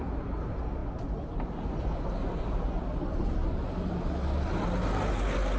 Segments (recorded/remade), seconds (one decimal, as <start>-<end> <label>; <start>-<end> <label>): 0.0-5.6 recorded